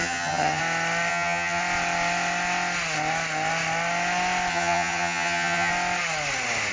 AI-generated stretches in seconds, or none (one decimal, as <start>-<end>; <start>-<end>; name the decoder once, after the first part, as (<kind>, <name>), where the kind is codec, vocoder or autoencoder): 0.0-0.6 (vocoder, HiFi-GAN); 1.1-1.6; 4.5-5.7